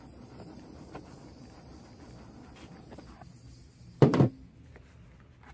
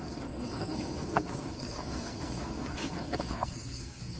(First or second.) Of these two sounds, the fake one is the second